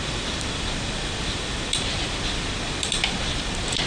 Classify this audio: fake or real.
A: real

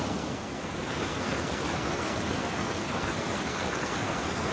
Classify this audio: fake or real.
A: fake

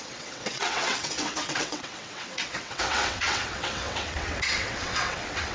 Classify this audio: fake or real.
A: fake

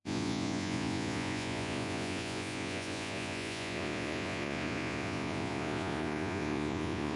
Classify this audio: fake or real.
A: fake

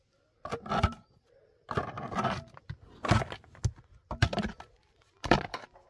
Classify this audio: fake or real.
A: real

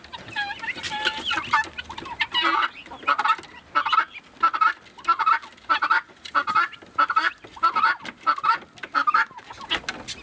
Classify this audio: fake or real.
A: real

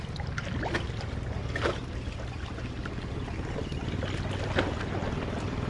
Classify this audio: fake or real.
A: real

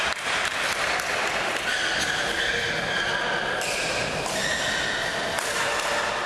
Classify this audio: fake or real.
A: real